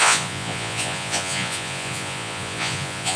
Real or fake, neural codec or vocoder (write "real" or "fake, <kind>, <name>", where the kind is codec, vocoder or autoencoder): fake, vocoder, Vocos